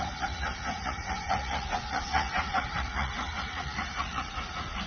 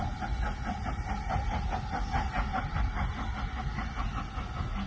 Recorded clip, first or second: second